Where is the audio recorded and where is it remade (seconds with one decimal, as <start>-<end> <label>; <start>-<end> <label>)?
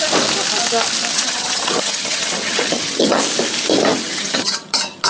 0.0-1.1 recorded; 1.1-3.2 remade; 3.2-3.9 recorded; 3.9-5.1 remade